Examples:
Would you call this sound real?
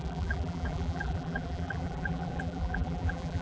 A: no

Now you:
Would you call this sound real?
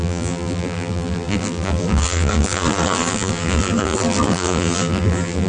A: no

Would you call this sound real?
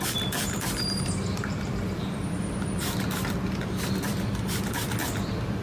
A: no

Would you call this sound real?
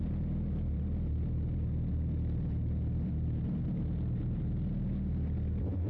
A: yes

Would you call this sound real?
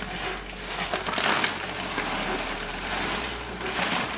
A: yes